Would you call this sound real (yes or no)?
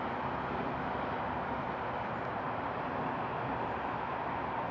yes